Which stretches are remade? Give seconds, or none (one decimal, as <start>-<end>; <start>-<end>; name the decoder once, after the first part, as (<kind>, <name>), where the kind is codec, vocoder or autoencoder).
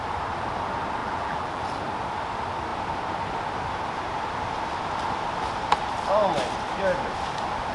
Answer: 1.0-1.6 (vocoder, BigVGAN v2)